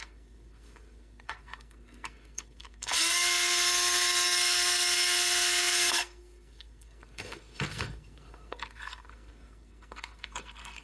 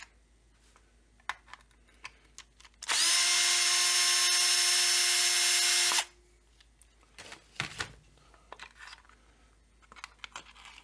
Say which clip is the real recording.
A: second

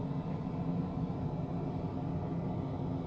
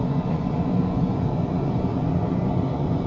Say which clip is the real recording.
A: first